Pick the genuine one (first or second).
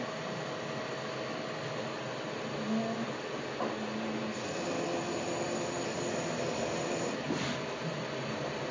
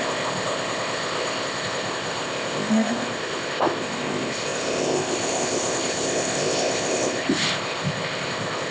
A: first